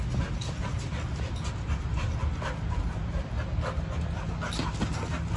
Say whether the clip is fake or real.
real